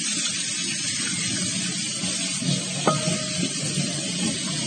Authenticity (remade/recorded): recorded